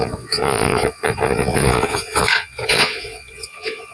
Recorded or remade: remade